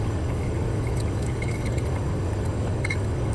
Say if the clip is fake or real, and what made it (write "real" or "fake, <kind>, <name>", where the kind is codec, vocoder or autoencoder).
fake, codec, DAC